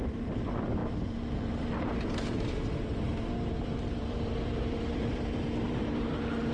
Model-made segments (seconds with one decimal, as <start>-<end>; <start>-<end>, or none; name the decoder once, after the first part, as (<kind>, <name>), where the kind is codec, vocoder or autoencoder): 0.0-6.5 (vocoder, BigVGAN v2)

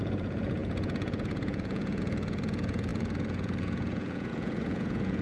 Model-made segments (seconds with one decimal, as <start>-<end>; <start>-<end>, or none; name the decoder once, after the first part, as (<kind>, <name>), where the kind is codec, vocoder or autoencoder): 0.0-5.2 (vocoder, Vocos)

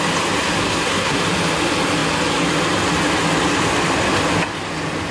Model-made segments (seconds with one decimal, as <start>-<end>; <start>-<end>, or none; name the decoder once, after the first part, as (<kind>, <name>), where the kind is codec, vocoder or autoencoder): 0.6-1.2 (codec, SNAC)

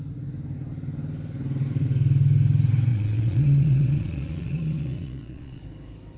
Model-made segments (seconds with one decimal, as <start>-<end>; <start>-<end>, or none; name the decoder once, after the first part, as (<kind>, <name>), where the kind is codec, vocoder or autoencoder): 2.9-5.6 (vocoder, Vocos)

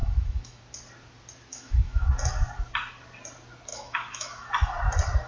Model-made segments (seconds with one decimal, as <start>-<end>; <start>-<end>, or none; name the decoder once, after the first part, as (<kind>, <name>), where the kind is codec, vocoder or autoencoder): 0.0-0.6 (autoencoder, DAC-VAE); 1.5-2.1; 3.7-4.5

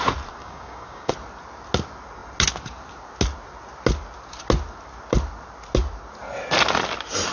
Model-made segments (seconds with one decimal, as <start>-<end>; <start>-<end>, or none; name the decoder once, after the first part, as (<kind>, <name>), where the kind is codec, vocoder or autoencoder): 0.4-1.1 (codec, DAC)

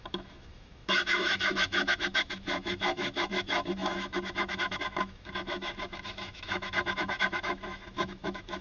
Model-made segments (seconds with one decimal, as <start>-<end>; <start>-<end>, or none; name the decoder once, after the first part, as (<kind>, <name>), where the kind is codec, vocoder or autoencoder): 0.0-8.6 (autoencoder, DAC-VAE)